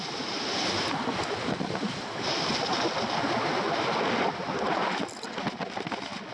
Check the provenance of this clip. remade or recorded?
recorded